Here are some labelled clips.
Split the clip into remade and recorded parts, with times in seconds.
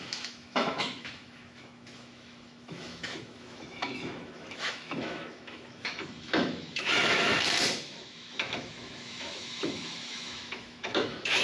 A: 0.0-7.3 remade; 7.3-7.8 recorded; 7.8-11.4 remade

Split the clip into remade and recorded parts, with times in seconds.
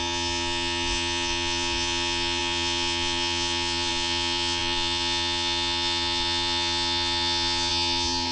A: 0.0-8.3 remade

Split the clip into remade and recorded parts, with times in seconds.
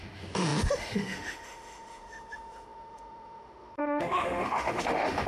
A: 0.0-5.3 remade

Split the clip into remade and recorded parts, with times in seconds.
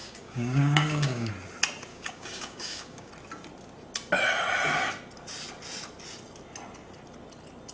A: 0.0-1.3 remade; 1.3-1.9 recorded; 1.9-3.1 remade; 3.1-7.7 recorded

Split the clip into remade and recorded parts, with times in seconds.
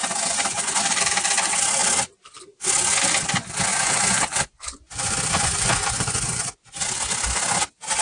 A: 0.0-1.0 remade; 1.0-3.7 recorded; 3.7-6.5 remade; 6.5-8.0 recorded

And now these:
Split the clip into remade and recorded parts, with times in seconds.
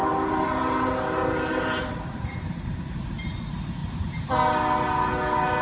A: 0.0-3.4 remade; 3.4-5.6 recorded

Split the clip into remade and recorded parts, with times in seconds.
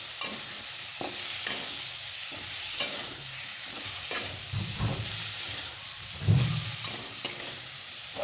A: 0.0-0.9 remade; 0.9-2.3 recorded; 2.3-8.2 remade